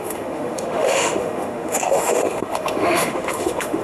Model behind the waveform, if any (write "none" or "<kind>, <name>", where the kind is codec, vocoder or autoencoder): autoencoder, DAC-VAE